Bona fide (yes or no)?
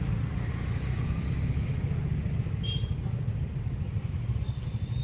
yes